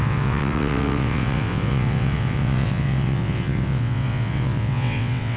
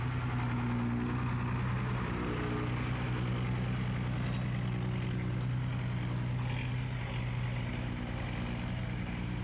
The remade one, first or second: first